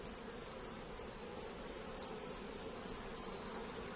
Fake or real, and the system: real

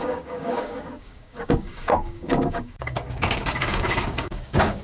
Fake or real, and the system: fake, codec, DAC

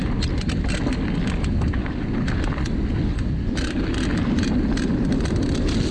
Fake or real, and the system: real